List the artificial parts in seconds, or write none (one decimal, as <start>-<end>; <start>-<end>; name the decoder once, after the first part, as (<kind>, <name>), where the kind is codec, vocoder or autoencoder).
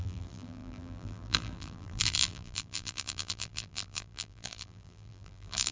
0.0-5.7 (vocoder, BigVGAN v2)